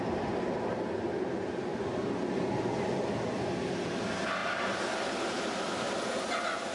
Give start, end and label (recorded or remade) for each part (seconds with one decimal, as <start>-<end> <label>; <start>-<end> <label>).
0.0-6.7 recorded